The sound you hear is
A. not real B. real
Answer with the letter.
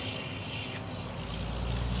B